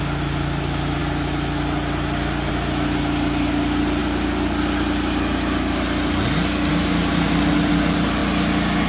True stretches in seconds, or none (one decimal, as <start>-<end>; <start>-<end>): 0.0-8.9